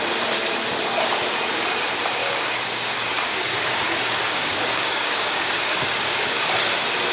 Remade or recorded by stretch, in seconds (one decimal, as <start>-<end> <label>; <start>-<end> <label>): 0.0-2.2 recorded; 2.2-6.5 remade; 6.5-7.1 recorded